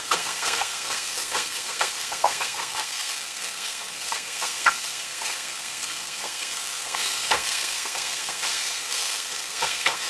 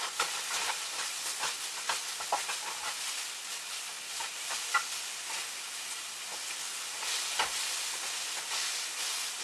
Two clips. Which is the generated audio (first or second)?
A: first